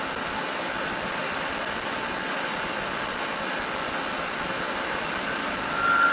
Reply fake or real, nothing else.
real